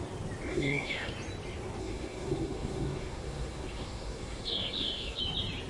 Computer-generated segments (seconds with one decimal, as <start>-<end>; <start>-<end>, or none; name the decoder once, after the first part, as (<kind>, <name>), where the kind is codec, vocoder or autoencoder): 0.5-1.1 (codec, SNAC); 1.8-5.2